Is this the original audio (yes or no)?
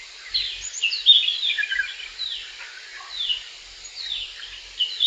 yes